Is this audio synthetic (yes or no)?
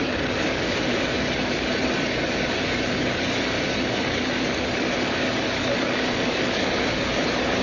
yes